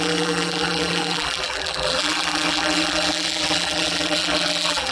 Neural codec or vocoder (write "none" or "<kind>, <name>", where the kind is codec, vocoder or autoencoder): vocoder, BigVGAN v2